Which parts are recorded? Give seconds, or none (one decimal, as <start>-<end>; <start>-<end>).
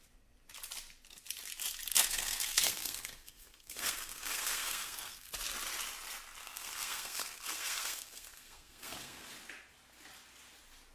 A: 0.0-1.9; 5.3-6.4; 9.3-10.9